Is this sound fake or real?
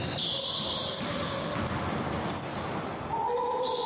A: real